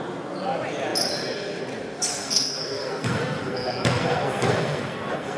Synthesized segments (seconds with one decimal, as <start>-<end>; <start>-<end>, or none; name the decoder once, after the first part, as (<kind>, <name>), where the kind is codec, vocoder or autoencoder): 2.1-5.4 (codec, SNAC)